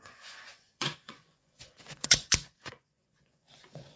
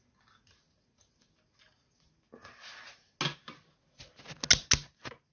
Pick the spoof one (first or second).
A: first